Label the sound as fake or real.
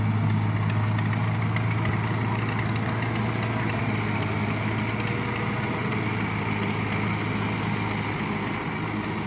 real